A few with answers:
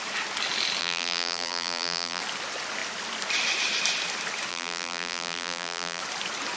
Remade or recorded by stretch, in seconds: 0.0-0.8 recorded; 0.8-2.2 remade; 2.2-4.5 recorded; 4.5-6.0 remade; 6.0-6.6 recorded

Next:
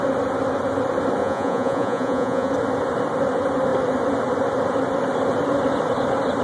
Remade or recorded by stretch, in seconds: 0.0-1.2 recorded; 1.2-2.5 remade; 2.5-6.4 recorded